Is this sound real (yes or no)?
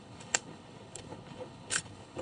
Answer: no